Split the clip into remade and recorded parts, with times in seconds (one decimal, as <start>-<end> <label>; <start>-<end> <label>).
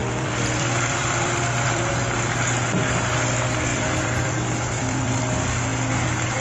0.0-1.9 remade; 1.9-3.7 recorded; 3.7-5.2 remade; 5.2-6.4 recorded